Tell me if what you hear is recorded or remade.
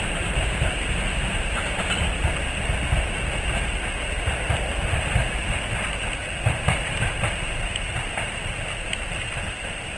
recorded